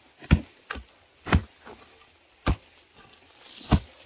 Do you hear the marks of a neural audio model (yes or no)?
no